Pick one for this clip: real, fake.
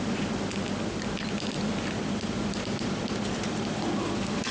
real